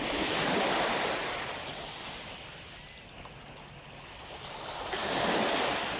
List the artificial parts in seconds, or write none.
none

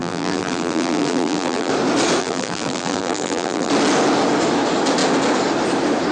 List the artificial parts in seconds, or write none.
0.0-1.7 (vocoder, BigVGAN v2); 2.2-3.7

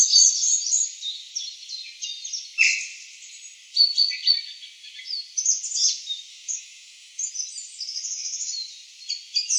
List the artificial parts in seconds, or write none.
6.3-7.3 (autoencoder, DAC-VAE)

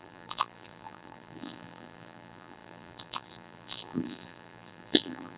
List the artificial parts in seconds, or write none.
0.0-5.4 (vocoder, BigVGAN v2)

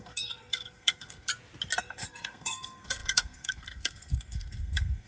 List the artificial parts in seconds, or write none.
0.0-1.3 (codec, SNAC); 1.8-5.1